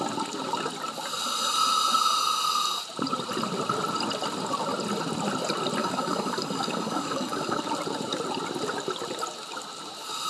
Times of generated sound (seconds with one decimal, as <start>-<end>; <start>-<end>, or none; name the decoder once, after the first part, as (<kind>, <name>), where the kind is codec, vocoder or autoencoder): 5.8-7.6 (codec, DAC)